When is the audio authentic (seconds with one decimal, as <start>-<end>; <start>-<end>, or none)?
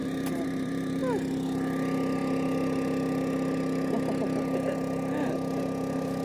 1.0-6.2